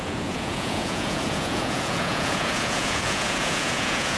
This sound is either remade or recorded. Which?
remade